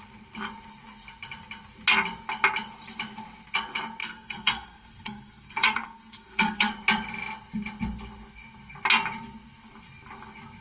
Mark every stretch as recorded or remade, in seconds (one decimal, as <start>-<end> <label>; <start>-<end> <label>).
0.0-4.0 recorded; 4.0-6.7 remade; 6.7-10.6 recorded